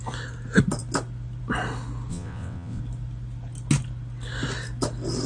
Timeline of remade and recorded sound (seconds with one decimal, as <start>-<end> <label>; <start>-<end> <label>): 0.0-2.1 recorded; 2.1-2.8 remade; 2.8-5.3 recorded